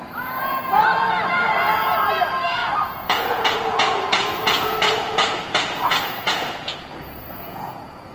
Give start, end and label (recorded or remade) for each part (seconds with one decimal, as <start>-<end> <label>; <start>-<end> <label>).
0.0-8.1 remade